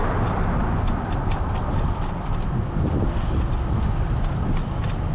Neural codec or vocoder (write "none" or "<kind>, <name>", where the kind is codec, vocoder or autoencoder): none